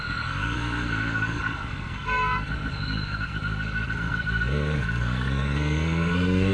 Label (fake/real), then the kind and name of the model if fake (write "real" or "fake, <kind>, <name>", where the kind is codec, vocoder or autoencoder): fake, codec, SNAC